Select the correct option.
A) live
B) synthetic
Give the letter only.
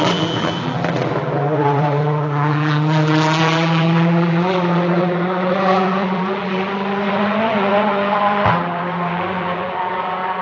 B